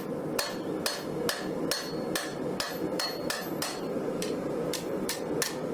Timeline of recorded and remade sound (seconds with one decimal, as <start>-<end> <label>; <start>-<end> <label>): 0.0-2.3 recorded; 2.3-5.2 remade; 5.2-5.7 recorded